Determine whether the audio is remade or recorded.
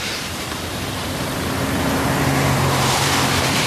remade